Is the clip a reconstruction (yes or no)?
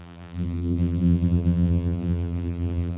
yes